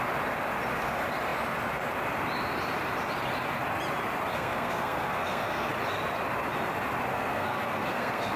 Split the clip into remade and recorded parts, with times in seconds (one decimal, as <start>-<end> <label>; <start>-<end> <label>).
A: 0.0-4.3 recorded; 4.3-5.7 remade; 5.7-7.1 recorded; 7.1-8.4 remade